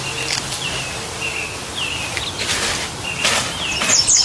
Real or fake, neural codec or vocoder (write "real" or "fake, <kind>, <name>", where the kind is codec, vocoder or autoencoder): real